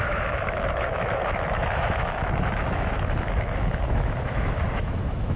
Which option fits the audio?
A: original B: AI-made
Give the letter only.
B